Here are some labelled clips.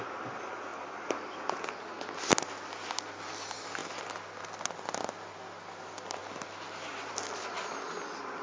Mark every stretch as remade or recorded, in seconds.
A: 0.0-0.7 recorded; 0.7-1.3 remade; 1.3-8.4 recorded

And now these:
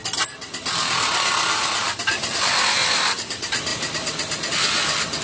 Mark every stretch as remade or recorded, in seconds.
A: 0.0-5.2 recorded

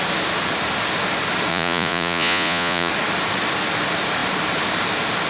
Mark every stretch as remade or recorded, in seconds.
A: 0.0-1.5 recorded; 1.5-2.9 remade; 2.9-5.3 recorded

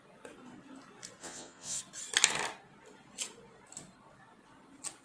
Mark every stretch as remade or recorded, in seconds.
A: 0.0-1.2 recorded; 1.2-1.8 remade; 1.8-5.0 recorded

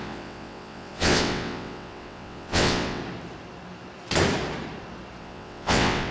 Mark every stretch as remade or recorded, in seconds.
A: 0.0-3.0 remade; 3.0-5.2 recorded; 5.2-6.1 remade

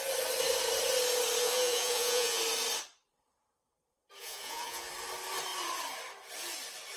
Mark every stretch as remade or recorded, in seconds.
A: 0.0-1.4 recorded; 1.4-2.4 remade; 2.4-4.2 recorded; 4.2-4.9 remade; 4.9-7.0 recorded

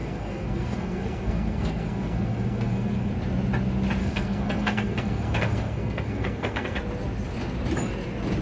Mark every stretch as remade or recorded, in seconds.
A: 0.0-3.1 remade; 3.1-4.0 recorded; 4.0-6.8 remade; 6.8-8.4 recorded